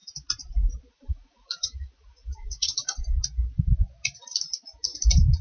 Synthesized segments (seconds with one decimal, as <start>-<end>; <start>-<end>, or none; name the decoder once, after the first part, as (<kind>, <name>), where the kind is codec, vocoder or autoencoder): 0.9-3.0 (vocoder, Vocos)